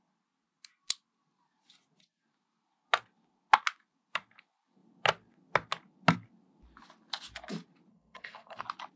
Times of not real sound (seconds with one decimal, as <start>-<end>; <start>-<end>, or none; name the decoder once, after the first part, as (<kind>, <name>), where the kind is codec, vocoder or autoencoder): 7.9-8.6 (codec, SNAC)